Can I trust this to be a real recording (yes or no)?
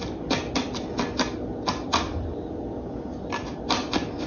yes